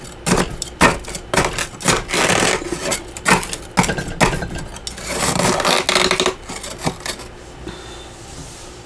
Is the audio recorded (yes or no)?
yes